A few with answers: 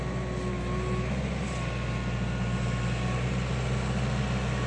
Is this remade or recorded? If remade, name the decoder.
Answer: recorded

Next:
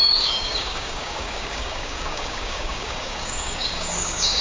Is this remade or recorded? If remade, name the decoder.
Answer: remade, codec, DAC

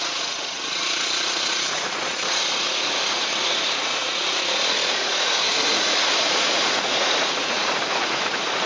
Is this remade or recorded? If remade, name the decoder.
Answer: remade, vocoder, Vocos